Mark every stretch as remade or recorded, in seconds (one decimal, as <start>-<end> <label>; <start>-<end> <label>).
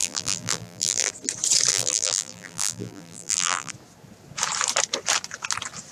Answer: 0.0-1.1 remade; 1.1-1.7 recorded; 1.7-3.7 remade; 3.7-5.9 recorded